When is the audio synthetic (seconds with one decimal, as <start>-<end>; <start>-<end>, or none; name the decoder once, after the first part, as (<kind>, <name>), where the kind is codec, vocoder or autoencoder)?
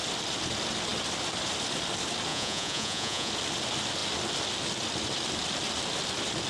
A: 2.3-3.3 (vocoder, Vocos)